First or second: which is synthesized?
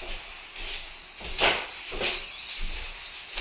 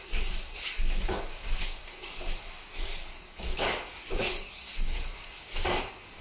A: second